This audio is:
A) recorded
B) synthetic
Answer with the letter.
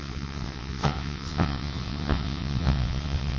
B